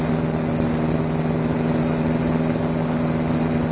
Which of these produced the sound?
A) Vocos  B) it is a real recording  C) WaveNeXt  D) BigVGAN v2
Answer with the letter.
B